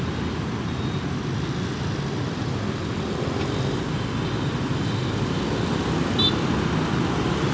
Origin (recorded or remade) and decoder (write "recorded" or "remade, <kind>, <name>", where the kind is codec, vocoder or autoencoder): recorded